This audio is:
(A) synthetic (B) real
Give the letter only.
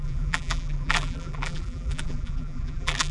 A